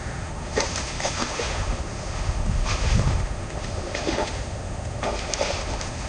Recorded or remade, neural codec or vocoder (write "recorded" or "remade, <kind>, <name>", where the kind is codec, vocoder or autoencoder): remade, autoencoder, DAC-VAE